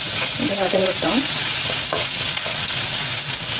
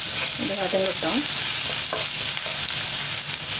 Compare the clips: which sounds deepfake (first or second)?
first